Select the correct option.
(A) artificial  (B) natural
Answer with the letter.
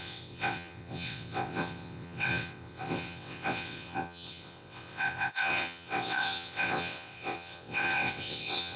A